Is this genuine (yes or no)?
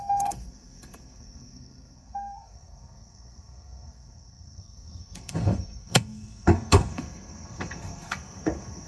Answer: no